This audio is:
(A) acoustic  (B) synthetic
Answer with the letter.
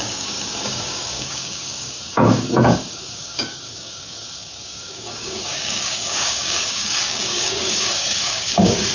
B